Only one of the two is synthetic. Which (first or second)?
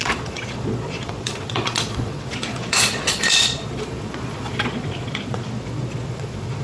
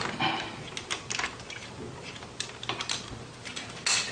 first